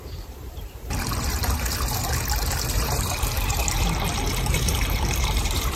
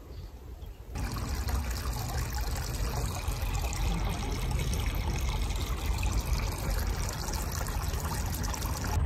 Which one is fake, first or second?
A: first